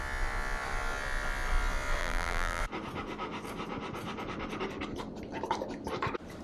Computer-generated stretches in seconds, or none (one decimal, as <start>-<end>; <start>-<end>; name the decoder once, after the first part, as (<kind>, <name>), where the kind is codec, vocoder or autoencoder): 2.0-2.6 (vocoder, BigVGAN v2)